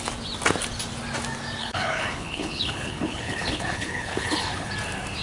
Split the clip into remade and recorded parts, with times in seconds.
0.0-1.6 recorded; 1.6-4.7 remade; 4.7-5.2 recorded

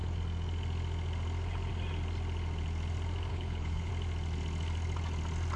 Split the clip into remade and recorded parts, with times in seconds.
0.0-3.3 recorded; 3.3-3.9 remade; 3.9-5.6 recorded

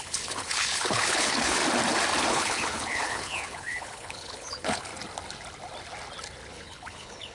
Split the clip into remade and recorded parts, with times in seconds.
0.0-1.6 remade; 1.6-2.3 recorded; 2.3-4.9 remade; 4.9-6.5 recorded; 6.5-7.3 remade

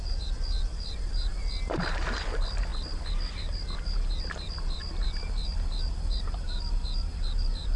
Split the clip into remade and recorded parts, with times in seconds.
0.0-7.8 recorded

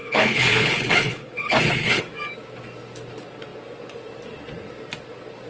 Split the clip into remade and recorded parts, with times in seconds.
0.0-2.0 remade; 2.0-5.5 recorded

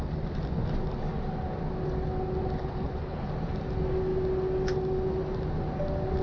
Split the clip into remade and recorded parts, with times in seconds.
0.0-2.6 recorded; 2.6-3.3 remade; 3.3-6.2 recorded

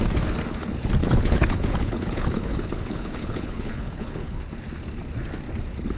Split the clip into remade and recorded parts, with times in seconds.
0.0-1.0 recorded; 1.0-4.6 remade; 4.6-6.0 recorded